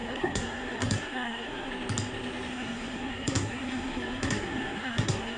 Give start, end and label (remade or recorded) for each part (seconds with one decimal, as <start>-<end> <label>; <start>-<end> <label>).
0.0-1.7 remade; 1.7-2.5 recorded; 2.5-5.4 remade